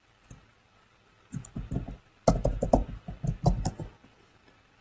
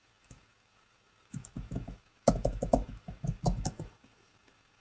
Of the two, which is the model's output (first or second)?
second